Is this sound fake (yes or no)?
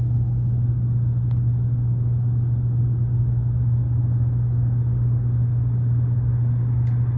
no